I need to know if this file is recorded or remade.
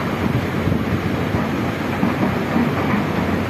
recorded